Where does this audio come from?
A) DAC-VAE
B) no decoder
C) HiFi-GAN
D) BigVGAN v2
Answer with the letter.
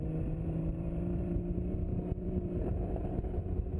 D